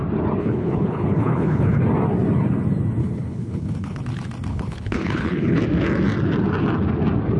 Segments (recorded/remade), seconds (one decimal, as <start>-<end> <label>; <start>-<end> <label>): 0.0-0.4 recorded; 0.4-1.8 remade; 1.8-3.0 recorded; 3.0-4.0 remade; 4.0-4.5 recorded; 4.5-5.6 remade; 5.6-7.4 recorded